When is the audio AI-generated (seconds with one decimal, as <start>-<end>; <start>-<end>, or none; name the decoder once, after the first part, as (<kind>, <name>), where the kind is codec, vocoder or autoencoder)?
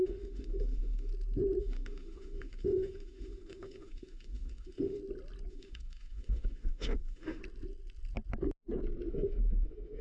0.0-1.1 (autoencoder, DAC-VAE); 1.6-5.0; 5.5-7.4; 9.1-10.0